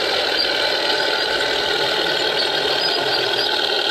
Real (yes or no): yes